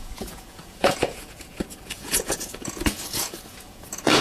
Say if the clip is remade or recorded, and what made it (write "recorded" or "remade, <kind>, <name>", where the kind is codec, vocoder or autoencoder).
remade, vocoder, Vocos